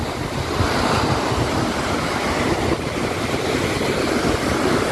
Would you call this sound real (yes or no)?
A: yes